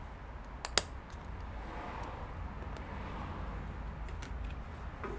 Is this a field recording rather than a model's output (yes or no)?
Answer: yes